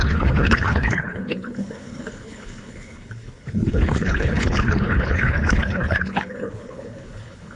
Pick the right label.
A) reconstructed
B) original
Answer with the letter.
A